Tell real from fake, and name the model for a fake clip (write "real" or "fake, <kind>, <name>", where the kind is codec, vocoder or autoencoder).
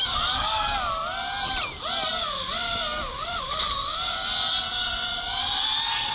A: real